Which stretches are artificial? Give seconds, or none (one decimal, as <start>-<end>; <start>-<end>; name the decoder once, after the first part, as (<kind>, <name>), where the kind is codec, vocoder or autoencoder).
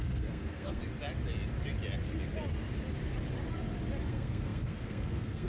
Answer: 0.0-0.8 (codec, SNAC); 4.1-5.5